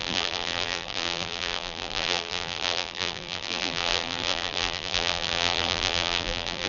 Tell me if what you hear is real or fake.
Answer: fake